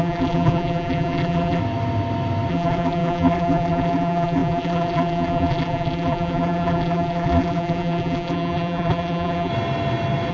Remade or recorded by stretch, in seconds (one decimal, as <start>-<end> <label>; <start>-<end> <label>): 0.0-1.6 remade; 1.6-2.5 recorded; 2.5-9.5 remade; 9.5-10.3 recorded